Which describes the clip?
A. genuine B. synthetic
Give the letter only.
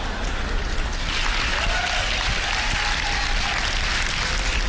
A